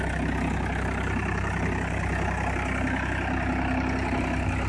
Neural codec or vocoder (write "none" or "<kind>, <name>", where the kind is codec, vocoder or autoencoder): none